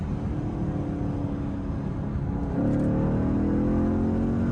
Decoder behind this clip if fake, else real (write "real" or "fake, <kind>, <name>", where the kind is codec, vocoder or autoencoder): real